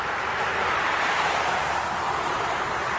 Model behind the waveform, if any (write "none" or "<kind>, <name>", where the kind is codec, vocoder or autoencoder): vocoder, BigVGAN v2